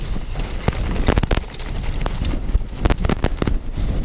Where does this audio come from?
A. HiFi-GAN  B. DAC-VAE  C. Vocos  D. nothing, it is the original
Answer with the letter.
D